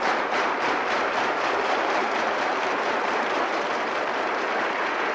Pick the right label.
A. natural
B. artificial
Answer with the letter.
B